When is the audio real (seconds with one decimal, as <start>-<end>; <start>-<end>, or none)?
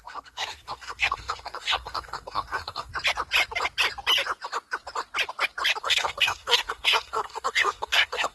2.9-5.8